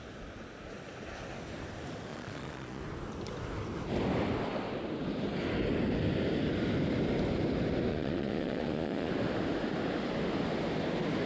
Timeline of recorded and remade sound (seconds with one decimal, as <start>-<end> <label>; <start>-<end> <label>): 0.0-2.1 recorded; 2.1-2.8 remade; 2.8-7.9 recorded; 7.9-9.1 remade; 9.1-11.3 recorded